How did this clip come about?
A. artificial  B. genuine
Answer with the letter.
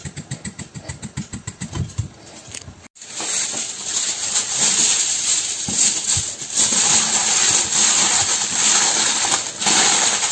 B